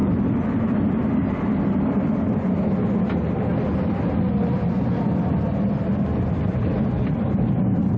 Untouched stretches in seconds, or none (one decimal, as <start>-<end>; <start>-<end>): 0.0-8.0

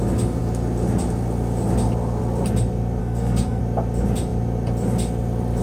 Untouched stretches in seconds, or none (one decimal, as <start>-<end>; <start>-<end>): 0.0-3.0; 3.6-5.6

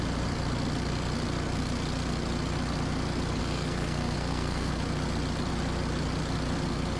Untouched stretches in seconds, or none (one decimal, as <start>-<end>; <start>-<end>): 0.0-3.4; 4.7-7.0

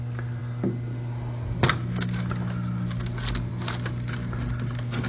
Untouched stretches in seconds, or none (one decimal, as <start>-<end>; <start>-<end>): 0.0-5.1

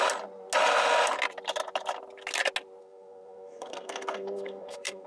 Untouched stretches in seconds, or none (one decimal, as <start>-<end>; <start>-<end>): 0.0-2.8

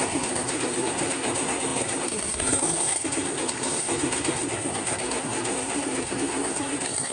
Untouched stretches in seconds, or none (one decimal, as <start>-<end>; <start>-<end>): none

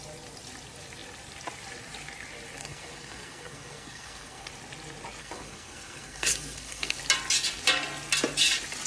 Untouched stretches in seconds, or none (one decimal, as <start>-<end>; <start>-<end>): 0.0-2.6; 4.5-5.2; 7.0-8.9